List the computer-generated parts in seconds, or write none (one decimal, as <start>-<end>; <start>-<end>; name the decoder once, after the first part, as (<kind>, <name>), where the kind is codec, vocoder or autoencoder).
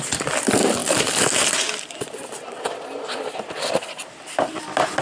0.0-5.0 (vocoder, BigVGAN v2)